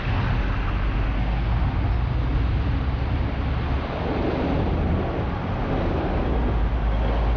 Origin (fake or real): real